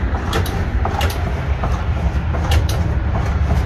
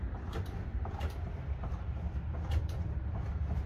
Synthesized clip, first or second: second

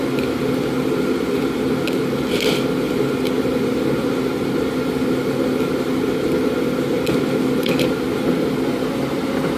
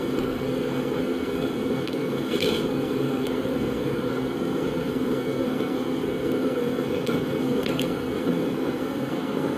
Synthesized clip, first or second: second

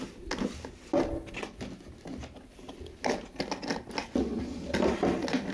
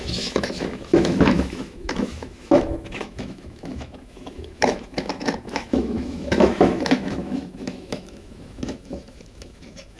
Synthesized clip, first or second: second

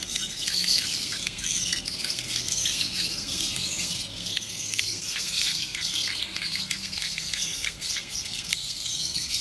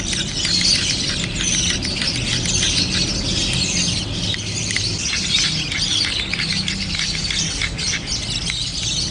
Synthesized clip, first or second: first